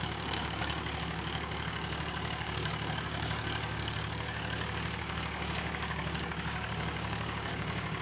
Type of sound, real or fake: fake